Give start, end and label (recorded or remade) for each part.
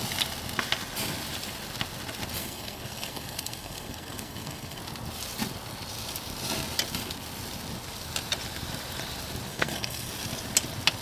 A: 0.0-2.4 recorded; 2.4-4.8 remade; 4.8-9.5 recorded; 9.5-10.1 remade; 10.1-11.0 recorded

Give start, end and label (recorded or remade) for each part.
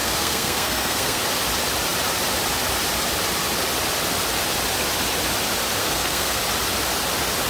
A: 0.0-1.2 remade; 1.2-5.8 recorded; 5.8-6.4 remade; 6.4-7.5 recorded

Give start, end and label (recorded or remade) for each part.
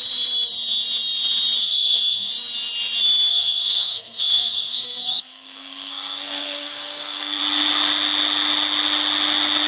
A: 0.0-1.6 recorded; 1.6-2.3 remade; 2.3-3.3 recorded; 3.3-7.4 remade; 7.4-9.7 recorded